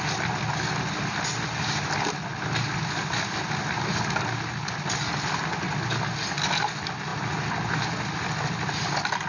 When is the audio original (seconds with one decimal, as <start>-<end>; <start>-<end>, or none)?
0.0-9.3